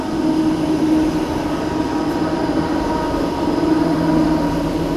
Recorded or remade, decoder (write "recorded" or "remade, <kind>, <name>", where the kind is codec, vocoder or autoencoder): recorded